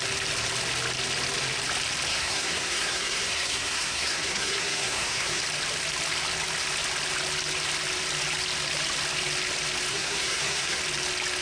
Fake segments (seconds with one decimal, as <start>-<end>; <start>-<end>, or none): 2.1-5.4; 9.9-10.8